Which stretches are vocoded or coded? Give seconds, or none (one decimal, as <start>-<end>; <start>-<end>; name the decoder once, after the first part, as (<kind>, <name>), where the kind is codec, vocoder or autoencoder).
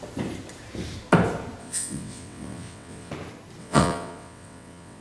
1.6-3.1 (vocoder, WaveNeXt); 3.6-5.0